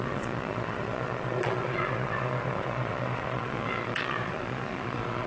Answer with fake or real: fake